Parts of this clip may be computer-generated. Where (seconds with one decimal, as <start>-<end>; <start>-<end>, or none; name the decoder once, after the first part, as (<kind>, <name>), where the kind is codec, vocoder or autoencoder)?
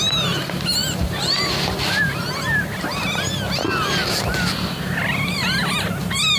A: 0.8-2.3 (vocoder, BigVGAN v2)